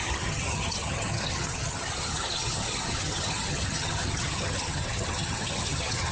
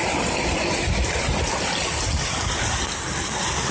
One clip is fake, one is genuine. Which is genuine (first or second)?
second